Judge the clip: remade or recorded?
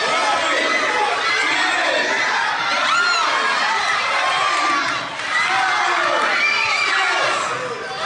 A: recorded